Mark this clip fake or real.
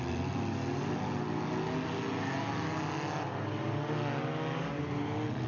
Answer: real